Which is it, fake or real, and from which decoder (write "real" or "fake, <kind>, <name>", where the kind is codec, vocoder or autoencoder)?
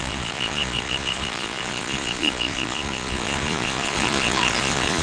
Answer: fake, vocoder, Vocos